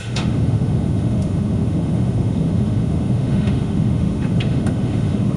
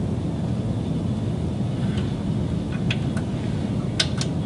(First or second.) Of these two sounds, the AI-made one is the first